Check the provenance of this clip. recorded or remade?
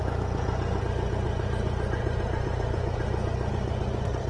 remade